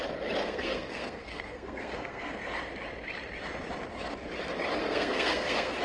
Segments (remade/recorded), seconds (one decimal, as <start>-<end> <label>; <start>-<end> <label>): 0.0-0.4 recorded; 0.4-2.3 remade; 2.3-4.8 recorded; 4.8-5.8 remade